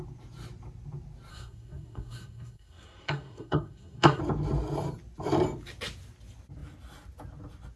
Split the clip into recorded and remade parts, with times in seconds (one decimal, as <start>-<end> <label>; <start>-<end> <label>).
0.0-1.3 recorded; 1.3-4.2 remade; 4.2-7.8 recorded